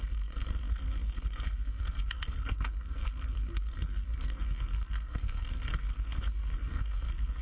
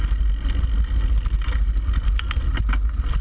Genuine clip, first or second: second